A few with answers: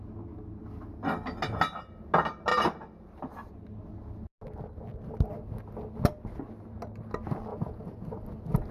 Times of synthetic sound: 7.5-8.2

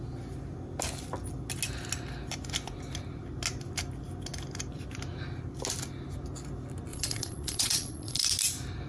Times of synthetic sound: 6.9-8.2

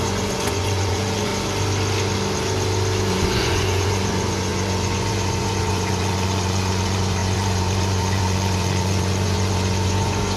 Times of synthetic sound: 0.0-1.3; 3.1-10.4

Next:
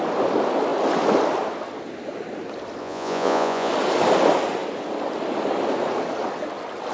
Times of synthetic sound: 2.8-3.7